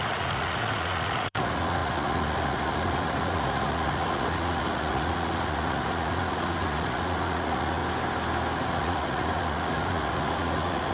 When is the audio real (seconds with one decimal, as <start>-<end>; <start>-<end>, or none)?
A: 7.8-8.7